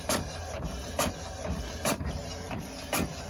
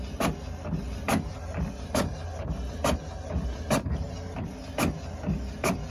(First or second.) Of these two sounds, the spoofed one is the first